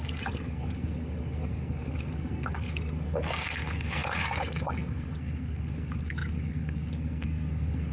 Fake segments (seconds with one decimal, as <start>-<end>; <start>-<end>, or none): 0.0-7.9